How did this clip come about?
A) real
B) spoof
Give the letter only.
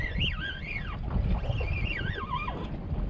A